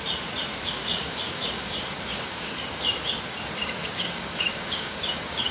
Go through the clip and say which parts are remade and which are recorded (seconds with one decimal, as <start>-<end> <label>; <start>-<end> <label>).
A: 0.0-0.5 recorded; 0.5-3.1 remade; 3.1-3.8 recorded; 3.8-5.5 remade